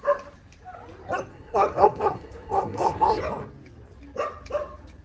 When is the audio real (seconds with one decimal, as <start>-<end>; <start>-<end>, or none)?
0.0-1.3; 3.2-5.0